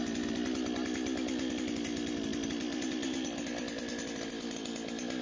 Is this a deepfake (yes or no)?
no